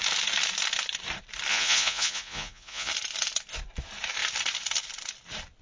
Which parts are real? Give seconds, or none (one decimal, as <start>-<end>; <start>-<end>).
0.0-1.5; 2.9-5.6